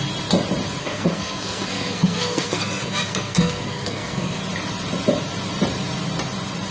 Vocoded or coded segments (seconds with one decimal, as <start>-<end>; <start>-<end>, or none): 0.8-4.4